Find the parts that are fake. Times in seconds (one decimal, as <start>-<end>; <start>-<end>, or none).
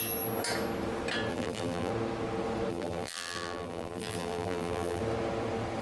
1.3-1.9; 2.7-5.0